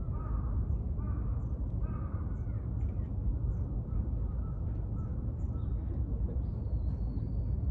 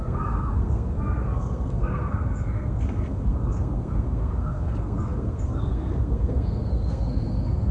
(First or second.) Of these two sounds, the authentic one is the first